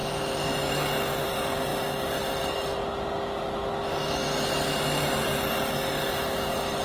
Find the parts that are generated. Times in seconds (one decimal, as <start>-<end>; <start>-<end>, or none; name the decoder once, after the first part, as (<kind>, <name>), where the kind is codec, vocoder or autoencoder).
1.2-1.7 (vocoder, BigVGAN v2); 2.4-2.8